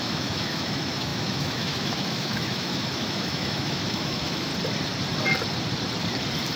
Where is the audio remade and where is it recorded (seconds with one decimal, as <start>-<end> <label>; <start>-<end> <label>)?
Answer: 0.0-4.5 remade; 4.5-6.6 recorded

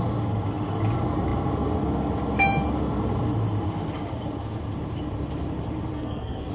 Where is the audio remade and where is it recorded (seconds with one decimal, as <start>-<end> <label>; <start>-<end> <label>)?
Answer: 0.0-5.9 recorded; 5.9-6.5 remade

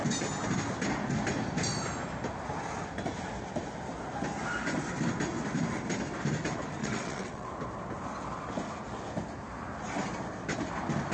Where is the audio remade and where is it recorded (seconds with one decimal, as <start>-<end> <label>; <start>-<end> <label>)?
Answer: 0.0-6.8 recorded; 6.8-7.5 remade; 7.5-11.1 recorded

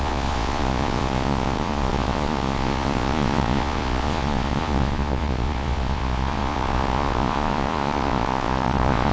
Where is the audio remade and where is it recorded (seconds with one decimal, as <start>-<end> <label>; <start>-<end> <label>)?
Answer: 0.0-9.1 remade

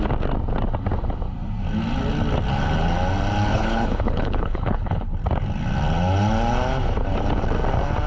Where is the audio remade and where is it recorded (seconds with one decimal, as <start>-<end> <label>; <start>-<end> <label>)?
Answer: 0.0-3.5 recorded; 3.5-5.1 remade; 5.1-8.1 recorded

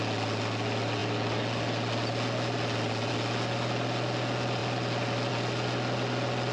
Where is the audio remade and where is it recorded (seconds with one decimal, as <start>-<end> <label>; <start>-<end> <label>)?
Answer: 0.0-6.5 recorded

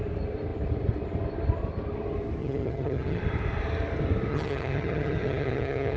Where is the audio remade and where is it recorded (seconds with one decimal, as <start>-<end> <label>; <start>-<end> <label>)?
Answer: 0.0-2.4 recorded; 2.4-3.2 remade; 3.2-4.3 recorded; 4.3-6.0 remade

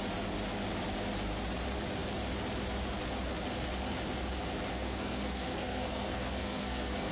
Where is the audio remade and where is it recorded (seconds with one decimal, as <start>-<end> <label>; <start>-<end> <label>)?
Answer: 0.0-4.7 recorded; 4.7-7.1 remade